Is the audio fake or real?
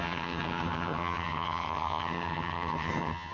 fake